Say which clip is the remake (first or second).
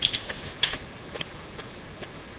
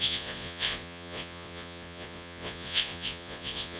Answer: second